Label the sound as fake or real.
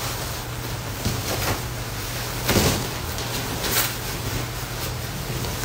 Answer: real